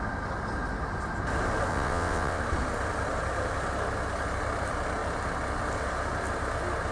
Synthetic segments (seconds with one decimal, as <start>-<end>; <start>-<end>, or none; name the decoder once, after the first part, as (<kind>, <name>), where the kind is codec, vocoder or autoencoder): 1.7-2.4 (vocoder, WaveNeXt)